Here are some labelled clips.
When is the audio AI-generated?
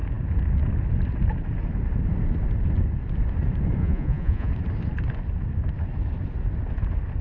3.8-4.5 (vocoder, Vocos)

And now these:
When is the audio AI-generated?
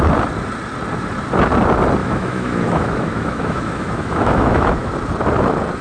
2.0-4.9 (autoencoder, DAC-VAE)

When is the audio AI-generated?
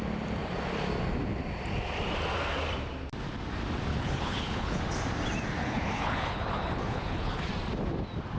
3.9-4.8 (codec, HILCodec); 5.6-7.5